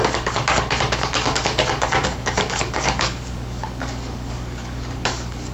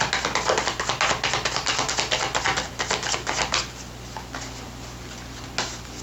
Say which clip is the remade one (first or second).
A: first